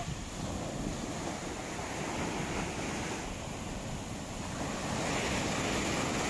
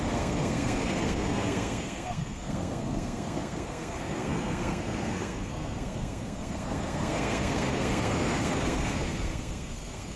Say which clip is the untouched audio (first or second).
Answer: first